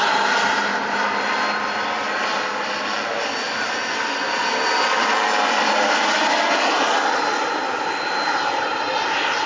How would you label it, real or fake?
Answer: real